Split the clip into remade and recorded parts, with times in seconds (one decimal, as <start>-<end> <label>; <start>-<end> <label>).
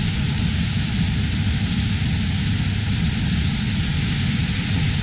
0.0-5.0 recorded